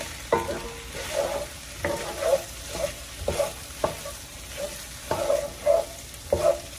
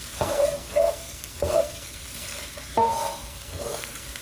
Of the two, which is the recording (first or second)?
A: first